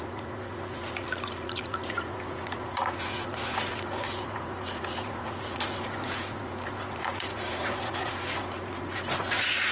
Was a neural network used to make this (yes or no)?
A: yes